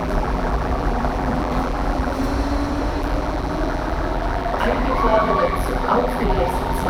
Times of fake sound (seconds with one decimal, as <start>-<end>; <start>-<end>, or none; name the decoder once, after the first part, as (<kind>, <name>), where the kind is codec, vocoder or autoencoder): 0.0-2.2 (vocoder, BigVGAN v2); 3.0-6.9